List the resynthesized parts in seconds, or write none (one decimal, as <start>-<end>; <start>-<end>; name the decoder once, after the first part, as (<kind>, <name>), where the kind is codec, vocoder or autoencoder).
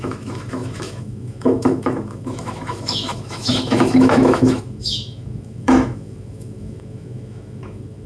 0.0-8.1 (autoencoder, DAC-VAE)